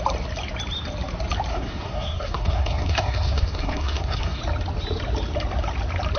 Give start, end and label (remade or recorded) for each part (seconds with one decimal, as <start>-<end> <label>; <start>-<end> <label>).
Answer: 0.0-1.5 recorded; 1.5-4.4 remade; 4.4-6.2 recorded